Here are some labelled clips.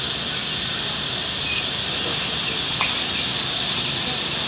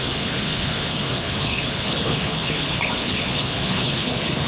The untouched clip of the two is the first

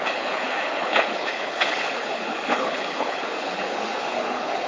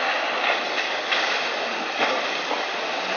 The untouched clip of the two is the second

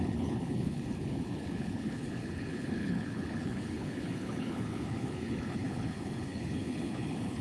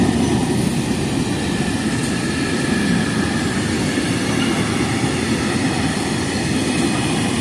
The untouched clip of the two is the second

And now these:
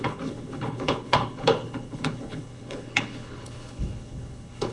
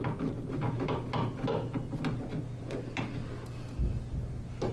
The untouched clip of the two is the second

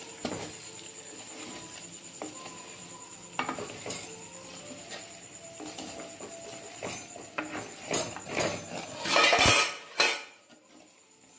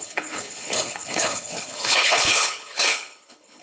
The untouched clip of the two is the first